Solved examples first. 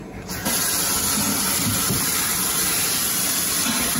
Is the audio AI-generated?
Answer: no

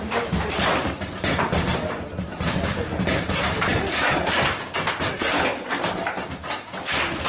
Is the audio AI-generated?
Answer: no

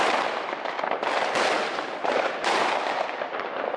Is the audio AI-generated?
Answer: no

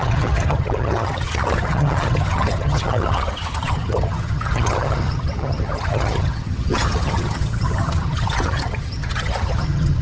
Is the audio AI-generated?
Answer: yes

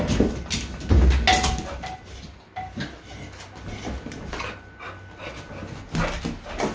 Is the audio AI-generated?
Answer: no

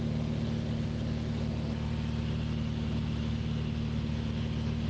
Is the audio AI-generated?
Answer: no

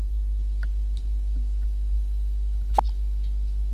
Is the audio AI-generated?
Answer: no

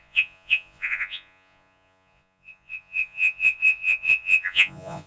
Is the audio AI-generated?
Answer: yes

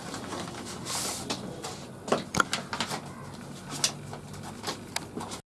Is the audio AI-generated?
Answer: no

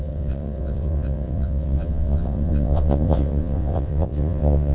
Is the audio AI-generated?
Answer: yes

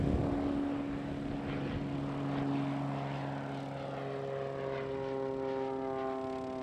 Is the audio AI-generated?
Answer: no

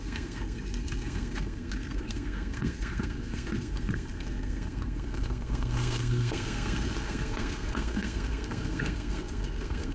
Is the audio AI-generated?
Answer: yes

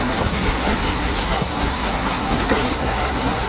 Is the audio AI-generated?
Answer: yes